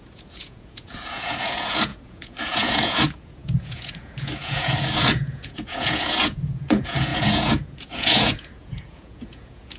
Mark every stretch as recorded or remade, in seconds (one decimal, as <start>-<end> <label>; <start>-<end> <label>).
0.0-9.8 remade